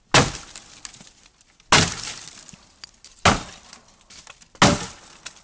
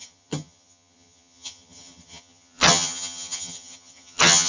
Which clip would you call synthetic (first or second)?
second